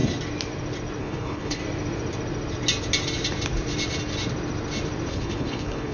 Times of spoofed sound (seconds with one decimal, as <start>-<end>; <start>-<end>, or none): 1.0-1.6; 5.1-5.9